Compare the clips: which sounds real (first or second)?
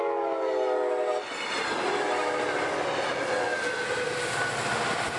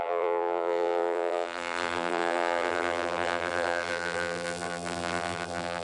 first